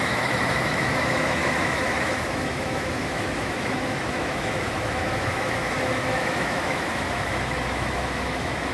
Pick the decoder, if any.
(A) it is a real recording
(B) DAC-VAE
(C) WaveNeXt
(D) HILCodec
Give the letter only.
B